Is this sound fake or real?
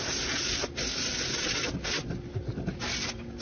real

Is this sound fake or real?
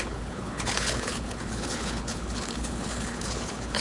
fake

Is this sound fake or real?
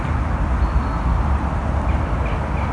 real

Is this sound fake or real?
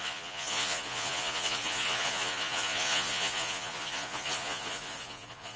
fake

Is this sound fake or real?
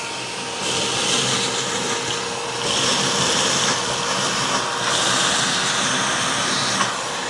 real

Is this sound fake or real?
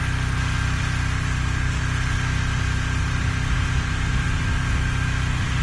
real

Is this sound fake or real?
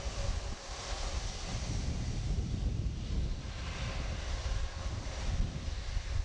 real